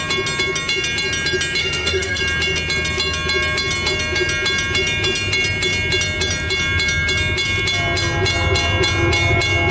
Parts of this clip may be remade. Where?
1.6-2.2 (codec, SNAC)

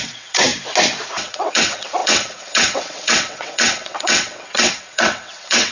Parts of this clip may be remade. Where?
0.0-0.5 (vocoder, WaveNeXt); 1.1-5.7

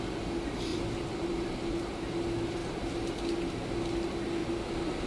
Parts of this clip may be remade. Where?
0.7-1.7 (vocoder, BigVGAN v2); 2.6-3.5; 4.4-5.1